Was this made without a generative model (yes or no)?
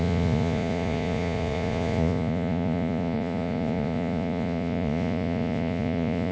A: no